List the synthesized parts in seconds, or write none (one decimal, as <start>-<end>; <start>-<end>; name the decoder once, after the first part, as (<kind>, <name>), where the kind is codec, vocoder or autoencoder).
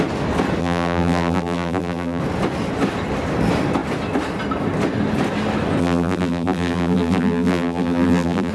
0.6-2.2 (vocoder, BigVGAN v2); 5.8-8.5